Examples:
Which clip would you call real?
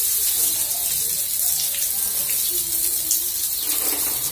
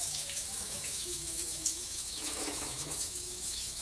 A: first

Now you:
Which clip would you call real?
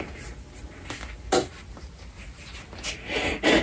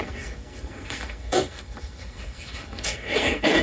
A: first